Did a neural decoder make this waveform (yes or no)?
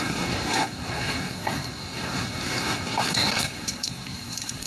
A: yes